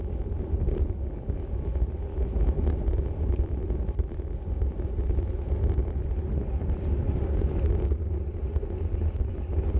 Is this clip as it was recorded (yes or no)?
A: yes